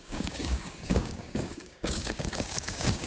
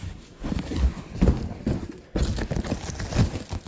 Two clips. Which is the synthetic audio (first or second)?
first